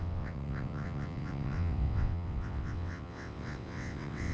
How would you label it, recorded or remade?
remade